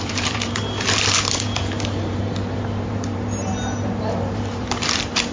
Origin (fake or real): fake